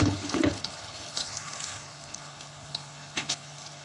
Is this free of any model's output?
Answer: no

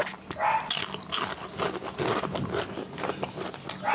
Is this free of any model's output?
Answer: yes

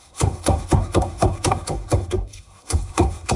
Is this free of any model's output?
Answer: no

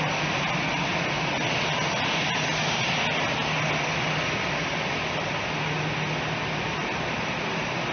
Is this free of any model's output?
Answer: yes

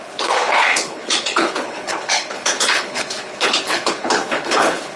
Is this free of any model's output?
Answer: no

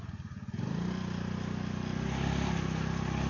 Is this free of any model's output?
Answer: yes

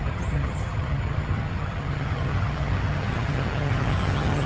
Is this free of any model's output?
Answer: no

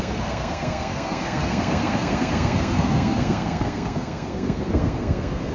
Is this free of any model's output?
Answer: no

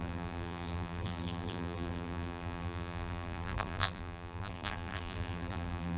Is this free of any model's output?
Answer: no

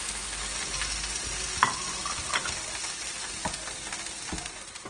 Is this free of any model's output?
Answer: yes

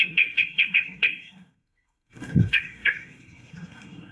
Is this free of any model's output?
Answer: no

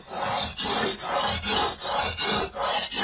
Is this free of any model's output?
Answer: yes